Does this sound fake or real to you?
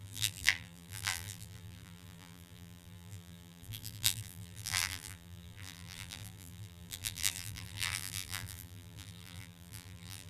fake